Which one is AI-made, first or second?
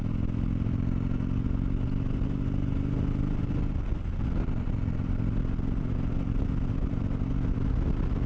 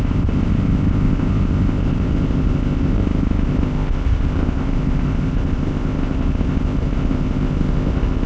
second